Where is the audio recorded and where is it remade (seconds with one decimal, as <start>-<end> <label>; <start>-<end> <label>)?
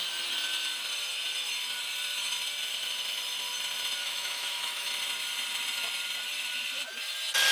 0.0-4.0 recorded; 4.0-4.9 remade; 4.9-7.5 recorded